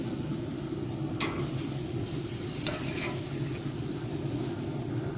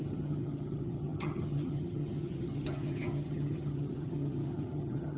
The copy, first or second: second